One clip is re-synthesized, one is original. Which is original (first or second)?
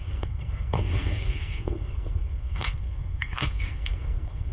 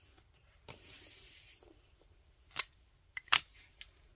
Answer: second